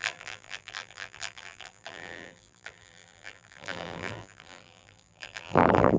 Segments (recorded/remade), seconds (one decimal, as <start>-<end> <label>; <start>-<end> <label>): 0.0-6.0 remade